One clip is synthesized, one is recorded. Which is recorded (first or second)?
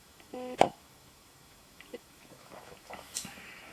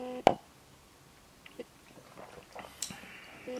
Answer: second